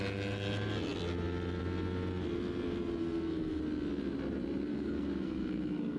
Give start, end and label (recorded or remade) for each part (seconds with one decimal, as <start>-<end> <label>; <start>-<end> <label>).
0.0-3.0 recorded; 3.0-3.6 remade; 3.6-4.7 recorded; 4.7-6.0 remade